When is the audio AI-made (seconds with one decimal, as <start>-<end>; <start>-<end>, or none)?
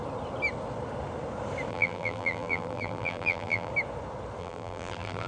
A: 1.7-3.7; 4.4-5.3